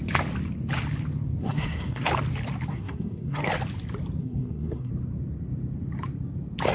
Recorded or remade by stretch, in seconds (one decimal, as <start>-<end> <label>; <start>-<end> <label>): 0.0-1.4 recorded; 1.4-2.1 remade; 2.1-2.7 recorded; 2.7-3.5 remade; 3.5-4.2 recorded; 4.2-4.9 remade; 4.9-6.7 recorded